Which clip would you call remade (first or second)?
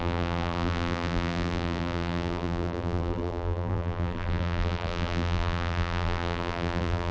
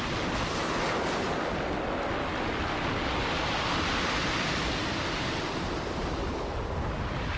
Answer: first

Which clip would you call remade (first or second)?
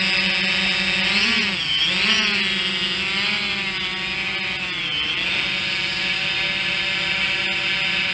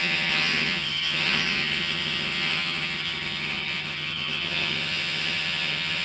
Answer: second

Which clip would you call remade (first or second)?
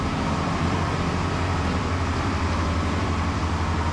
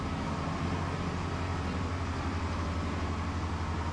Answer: first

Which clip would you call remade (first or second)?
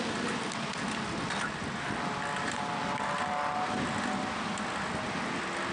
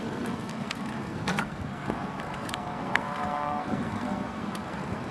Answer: second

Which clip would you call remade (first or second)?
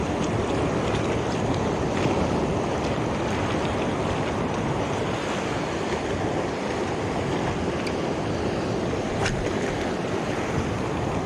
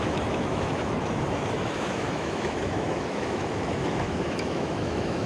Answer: second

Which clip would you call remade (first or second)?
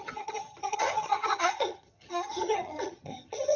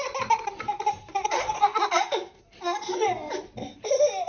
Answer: first